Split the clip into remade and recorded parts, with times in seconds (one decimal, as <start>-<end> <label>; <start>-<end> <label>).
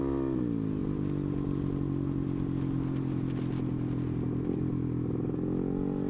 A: 0.0-6.1 recorded